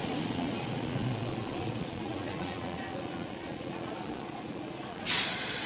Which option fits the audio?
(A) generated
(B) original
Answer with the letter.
A